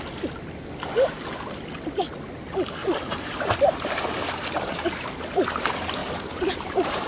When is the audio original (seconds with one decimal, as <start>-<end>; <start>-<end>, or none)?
0.0-2.8; 4.3-6.0